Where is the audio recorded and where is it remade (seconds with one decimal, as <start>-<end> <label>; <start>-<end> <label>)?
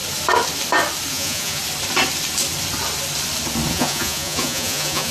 0.0-1.1 recorded; 1.1-1.6 remade; 1.6-3.7 recorded; 3.7-5.1 remade